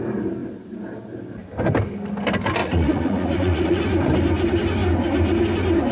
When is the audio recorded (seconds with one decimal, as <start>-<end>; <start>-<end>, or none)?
0.0-2.6; 3.8-5.9